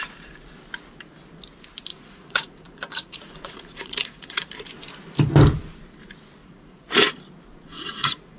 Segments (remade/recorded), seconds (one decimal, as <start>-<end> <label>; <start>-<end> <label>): 0.0-1.9 recorded; 1.9-4.5 remade; 4.5-6.4 recorded; 6.4-7.1 remade; 7.1-7.5 recorded; 7.5-8.4 remade